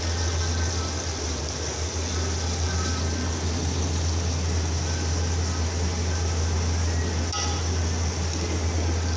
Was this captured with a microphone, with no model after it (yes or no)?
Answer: yes